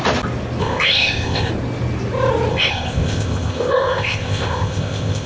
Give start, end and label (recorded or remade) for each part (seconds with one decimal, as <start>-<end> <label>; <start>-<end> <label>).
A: 0.0-0.6 recorded; 0.6-1.5 remade; 1.5-2.5 recorded; 2.5-5.3 remade

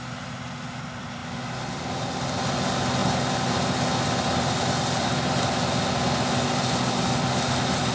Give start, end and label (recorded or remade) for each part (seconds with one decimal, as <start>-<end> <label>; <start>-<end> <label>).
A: 0.0-7.9 recorded

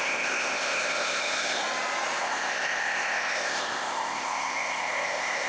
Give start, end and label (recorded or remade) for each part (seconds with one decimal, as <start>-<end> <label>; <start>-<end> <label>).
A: 0.0-1.6 remade; 1.6-2.2 recorded; 2.2-5.5 remade

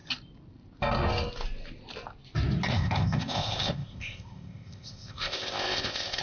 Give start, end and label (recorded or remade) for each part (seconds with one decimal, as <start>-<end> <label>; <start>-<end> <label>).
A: 0.0-2.7 recorded; 2.7-6.2 remade

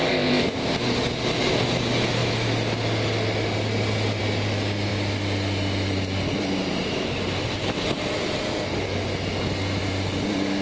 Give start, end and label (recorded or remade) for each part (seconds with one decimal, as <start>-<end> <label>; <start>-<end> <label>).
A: 0.0-0.8 remade; 0.8-10.6 recorded

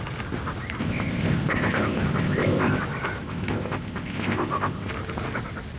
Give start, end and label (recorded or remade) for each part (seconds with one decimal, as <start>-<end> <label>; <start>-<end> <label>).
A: 0.0-0.8 recorded; 0.8-2.8 remade; 2.8-3.2 recorded; 3.2-4.9 remade; 4.9-5.8 recorded